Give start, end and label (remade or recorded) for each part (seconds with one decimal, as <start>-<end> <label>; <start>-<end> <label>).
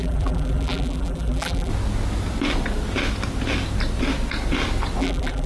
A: 0.0-1.7 remade; 1.7-5.0 recorded; 5.0-5.5 remade